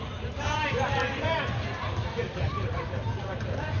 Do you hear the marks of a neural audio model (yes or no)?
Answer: no